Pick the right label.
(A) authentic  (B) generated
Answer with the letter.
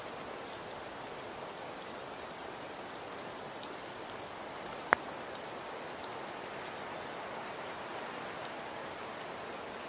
A